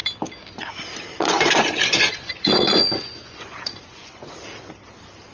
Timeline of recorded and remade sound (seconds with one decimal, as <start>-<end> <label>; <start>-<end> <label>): 0.0-1.1 recorded; 1.1-4.3 remade; 4.3-5.3 recorded